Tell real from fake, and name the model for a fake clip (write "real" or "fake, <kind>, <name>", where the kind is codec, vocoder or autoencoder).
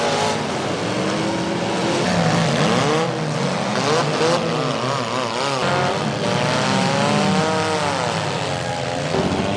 real